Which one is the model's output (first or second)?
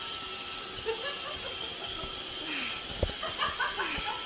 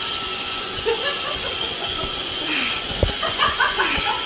second